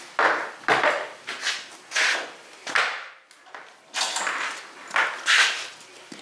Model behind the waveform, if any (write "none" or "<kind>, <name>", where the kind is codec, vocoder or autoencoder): none